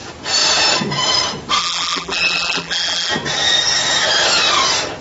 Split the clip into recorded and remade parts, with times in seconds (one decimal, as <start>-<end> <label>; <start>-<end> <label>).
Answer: 0.0-1.6 recorded; 1.6-3.1 remade; 3.1-5.0 recorded